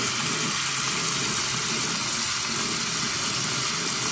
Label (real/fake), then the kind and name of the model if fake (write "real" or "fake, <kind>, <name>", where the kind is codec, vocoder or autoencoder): real